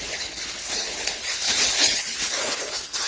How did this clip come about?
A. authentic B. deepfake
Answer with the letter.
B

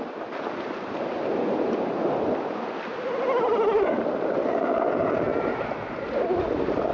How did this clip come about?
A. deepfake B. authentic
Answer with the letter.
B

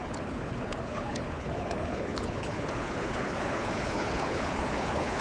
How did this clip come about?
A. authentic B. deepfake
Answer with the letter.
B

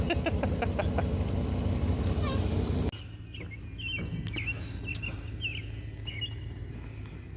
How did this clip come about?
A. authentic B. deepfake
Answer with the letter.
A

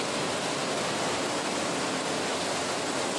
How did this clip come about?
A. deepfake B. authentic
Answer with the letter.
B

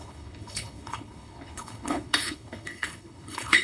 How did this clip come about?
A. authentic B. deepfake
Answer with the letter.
B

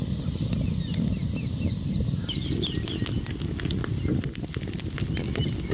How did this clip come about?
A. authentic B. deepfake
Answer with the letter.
A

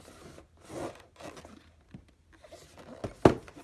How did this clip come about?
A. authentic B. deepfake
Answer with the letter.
A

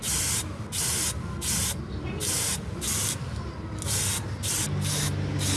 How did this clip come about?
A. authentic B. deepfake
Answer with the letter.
A